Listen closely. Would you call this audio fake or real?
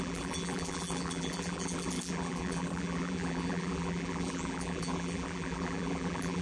fake